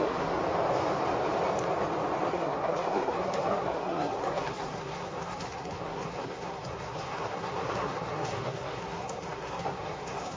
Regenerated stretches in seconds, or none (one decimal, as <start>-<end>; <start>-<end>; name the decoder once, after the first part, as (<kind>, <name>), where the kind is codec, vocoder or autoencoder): 0.0-0.4 (codec, SNAC); 2.3-10.4